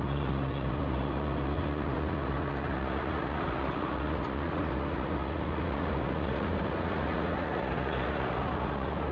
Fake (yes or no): yes